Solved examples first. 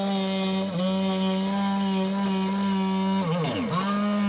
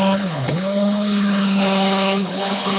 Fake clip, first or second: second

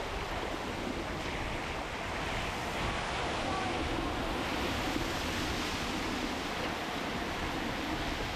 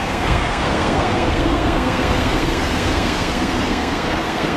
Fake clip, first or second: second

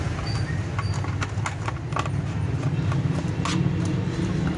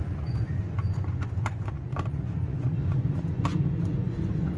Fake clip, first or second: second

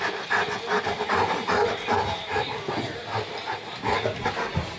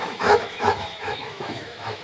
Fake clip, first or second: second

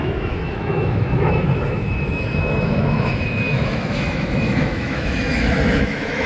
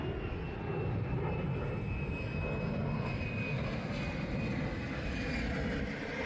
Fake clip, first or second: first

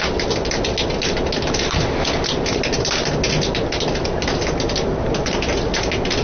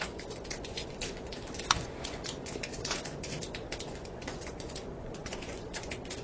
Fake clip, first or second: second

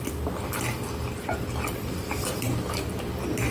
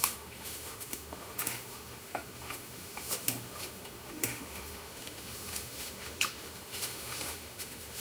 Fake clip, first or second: second